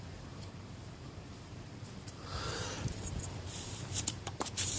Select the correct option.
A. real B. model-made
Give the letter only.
B